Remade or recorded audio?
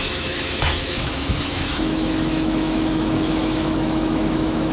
remade